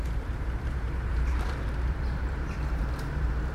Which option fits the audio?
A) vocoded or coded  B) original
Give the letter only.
A